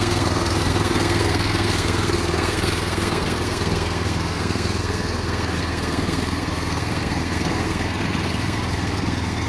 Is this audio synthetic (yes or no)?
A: yes